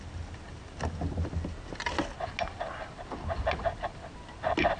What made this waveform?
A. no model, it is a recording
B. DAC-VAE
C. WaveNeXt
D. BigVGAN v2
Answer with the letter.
A